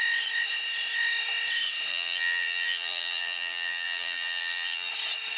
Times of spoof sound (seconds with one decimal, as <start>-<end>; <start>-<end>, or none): 1.9-4.9